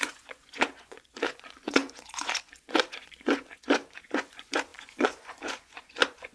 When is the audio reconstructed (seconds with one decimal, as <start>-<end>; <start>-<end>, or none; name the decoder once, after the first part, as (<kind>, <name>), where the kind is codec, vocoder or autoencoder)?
0.0-6.3 (vocoder, Vocos)